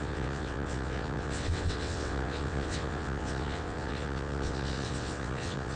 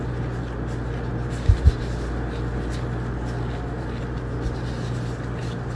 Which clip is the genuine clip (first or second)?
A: second